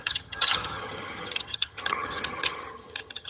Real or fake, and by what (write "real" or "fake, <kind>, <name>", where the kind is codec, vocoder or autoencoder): fake, vocoder, HiFi-GAN